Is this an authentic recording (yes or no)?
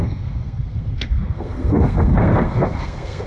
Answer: no